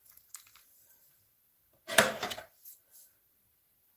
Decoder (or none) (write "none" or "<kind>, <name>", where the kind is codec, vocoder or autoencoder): vocoder, BigVGAN v2